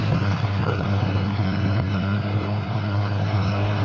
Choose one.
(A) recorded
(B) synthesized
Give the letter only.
B